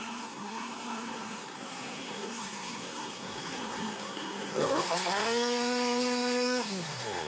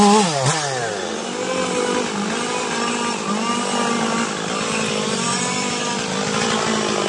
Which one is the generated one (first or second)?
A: first